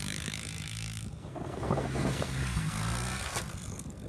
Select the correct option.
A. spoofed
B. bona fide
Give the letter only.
A